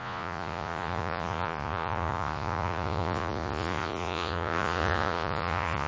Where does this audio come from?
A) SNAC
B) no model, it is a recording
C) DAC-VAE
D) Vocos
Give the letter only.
D